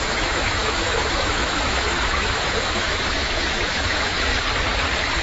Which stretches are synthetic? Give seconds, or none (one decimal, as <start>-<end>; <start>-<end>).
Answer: 0.0-4.3